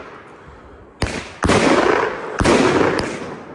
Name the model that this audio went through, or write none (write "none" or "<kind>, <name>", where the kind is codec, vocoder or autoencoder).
none